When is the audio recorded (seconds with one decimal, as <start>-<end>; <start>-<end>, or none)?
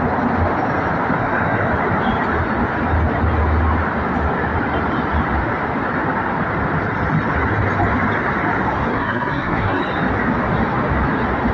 0.0-1.2; 1.7-8.9; 9.8-11.5